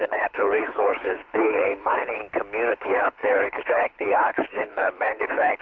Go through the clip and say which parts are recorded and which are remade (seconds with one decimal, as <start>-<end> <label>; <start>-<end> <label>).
0.0-2.2 remade; 2.2-2.7 recorded; 2.7-5.6 remade